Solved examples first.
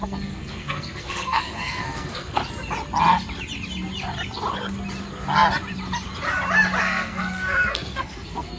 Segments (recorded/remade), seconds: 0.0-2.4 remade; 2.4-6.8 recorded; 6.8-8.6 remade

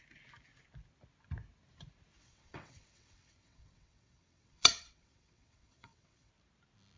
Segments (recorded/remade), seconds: 0.0-2.1 recorded; 2.1-6.3 remade; 6.3-7.0 recorded

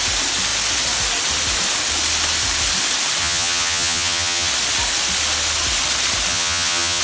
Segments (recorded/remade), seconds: 0.0-3.2 recorded; 3.2-4.5 remade; 4.5-6.3 recorded; 6.3-7.0 remade

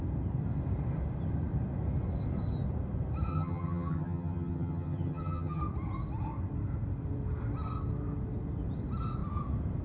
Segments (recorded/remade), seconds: 0.0-3.3 recorded; 3.3-5.6 remade; 5.6-9.8 recorded

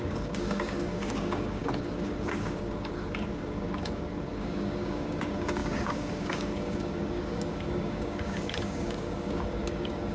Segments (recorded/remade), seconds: 0.0-10.1 remade

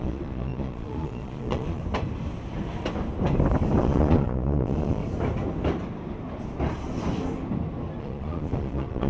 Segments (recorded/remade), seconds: 0.0-1.8 remade; 1.8-3.8 recorded; 3.8-5.0 remade; 5.0-8.0 recorded; 8.0-9.1 remade

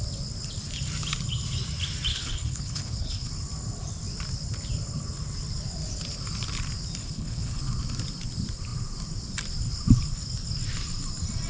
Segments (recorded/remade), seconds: 0.0-2.1 recorded; 2.1-3.3 remade; 3.3-7.0 recorded; 7.0-7.6 remade; 7.6-11.5 recorded

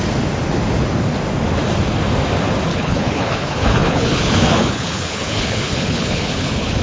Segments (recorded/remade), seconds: 0.0-2.7 recorded; 2.7-6.8 remade